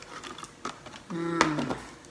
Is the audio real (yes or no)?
yes